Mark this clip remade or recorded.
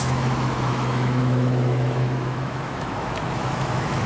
remade